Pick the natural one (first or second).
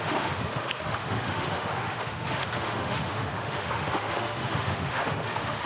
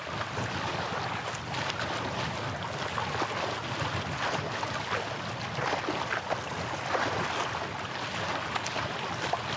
second